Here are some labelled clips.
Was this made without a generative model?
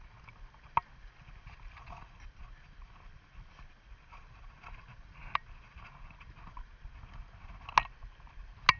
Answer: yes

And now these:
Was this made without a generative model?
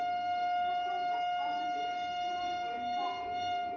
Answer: no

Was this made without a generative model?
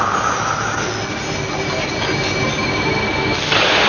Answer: yes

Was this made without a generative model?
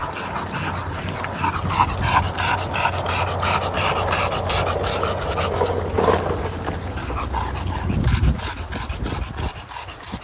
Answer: yes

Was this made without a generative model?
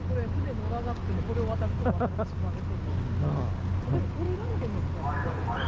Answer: yes